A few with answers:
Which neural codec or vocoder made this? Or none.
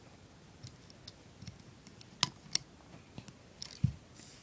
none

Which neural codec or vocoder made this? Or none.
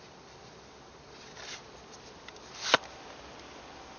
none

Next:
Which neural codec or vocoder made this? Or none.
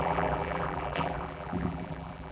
vocoder, BigVGAN v2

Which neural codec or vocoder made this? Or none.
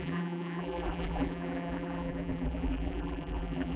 vocoder, BigVGAN v2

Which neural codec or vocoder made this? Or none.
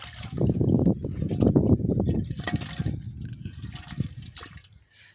none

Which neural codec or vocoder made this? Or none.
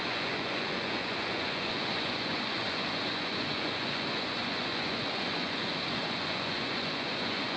vocoder, Vocos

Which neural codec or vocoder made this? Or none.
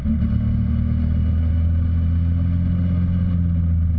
none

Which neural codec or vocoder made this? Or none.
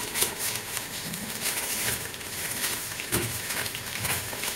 autoencoder, DAC-VAE